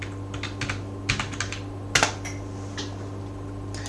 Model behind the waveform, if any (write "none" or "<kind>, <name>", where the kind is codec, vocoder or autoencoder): none